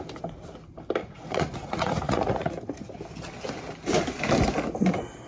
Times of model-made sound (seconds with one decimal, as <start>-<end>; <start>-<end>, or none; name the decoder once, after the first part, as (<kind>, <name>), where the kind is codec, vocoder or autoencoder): 1.0-2.5 (vocoder, Vocos)